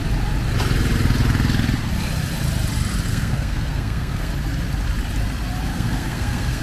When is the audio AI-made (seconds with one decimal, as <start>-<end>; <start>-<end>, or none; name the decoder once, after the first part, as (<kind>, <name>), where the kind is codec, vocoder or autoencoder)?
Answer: 3.1-4.3 (codec, SNAC); 5.7-6.6